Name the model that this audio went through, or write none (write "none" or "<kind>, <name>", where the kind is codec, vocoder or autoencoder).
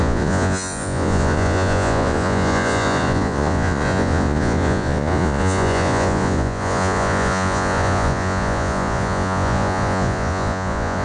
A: vocoder, Vocos